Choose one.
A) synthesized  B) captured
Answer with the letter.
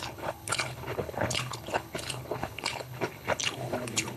A